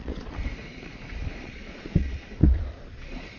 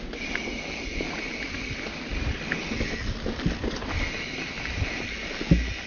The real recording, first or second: second